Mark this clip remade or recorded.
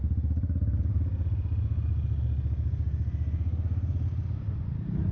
recorded